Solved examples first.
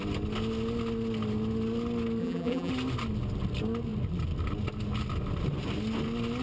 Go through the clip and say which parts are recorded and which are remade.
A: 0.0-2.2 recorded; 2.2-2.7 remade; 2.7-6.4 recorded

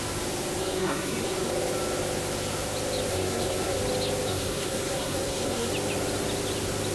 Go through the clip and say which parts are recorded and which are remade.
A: 0.0-0.6 recorded; 0.6-1.5 remade; 1.5-3.1 recorded; 3.1-3.8 remade; 3.8-4.3 recorded; 4.3-5.7 remade; 5.7-6.9 recorded